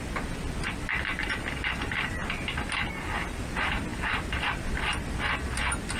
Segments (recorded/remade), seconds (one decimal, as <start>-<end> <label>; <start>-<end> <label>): 0.0-6.0 recorded